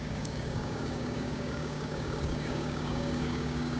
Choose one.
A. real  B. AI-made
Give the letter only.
B